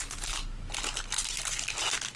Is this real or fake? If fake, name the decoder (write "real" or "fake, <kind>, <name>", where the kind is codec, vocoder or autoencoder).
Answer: real